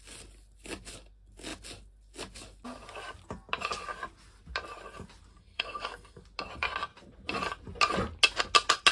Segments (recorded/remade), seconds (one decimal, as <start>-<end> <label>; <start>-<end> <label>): 0.0-5.3 recorded; 5.3-6.2 remade; 6.2-8.9 recorded